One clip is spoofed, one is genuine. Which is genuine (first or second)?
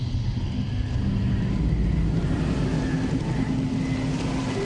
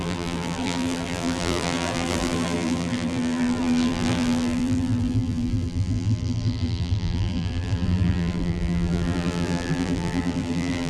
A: first